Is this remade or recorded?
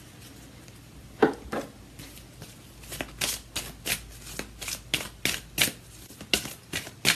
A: recorded